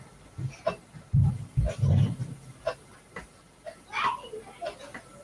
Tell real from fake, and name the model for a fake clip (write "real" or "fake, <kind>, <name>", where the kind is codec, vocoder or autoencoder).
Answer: real